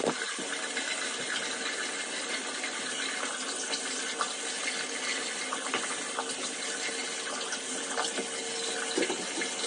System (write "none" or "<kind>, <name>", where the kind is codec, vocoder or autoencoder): none